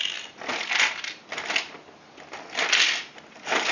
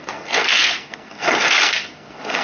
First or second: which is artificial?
second